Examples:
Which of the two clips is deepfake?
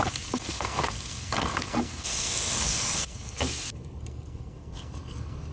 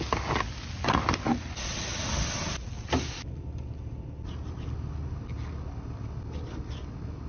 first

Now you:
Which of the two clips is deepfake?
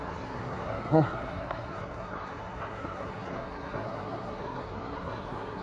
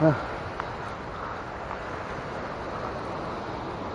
first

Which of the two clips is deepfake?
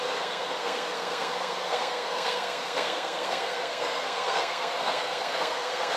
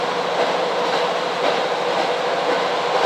first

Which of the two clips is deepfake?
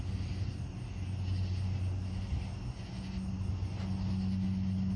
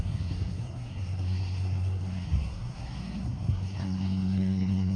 second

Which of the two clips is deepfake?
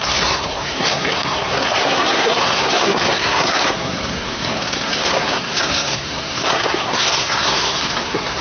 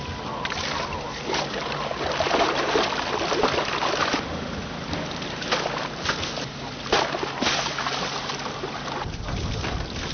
first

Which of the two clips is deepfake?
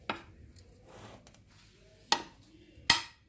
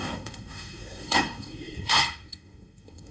second